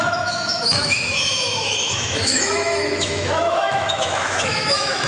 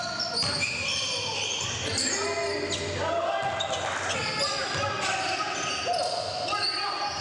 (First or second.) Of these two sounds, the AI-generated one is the first